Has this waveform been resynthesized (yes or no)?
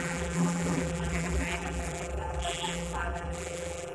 yes